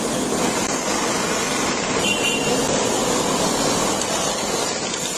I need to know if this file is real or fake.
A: real